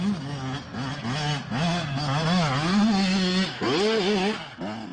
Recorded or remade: recorded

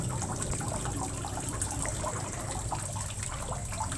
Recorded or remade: recorded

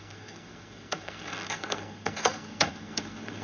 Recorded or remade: remade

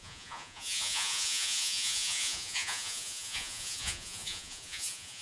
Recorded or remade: remade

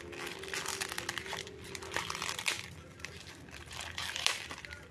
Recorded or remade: remade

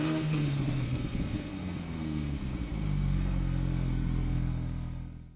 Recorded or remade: remade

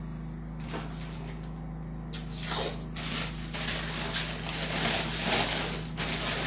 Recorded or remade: recorded